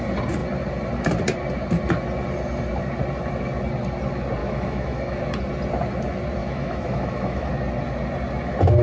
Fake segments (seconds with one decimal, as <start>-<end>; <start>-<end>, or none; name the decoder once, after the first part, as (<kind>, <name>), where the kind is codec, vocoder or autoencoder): 4.4-5.2 (autoencoder, DAC-VAE); 6.4-7.5